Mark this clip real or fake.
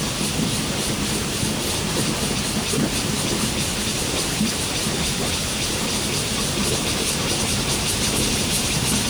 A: fake